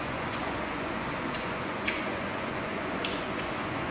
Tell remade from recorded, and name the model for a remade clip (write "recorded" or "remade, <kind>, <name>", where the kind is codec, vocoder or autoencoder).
remade, vocoder, Vocos